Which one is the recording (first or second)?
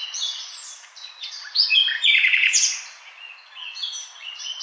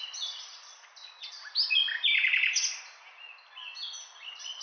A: second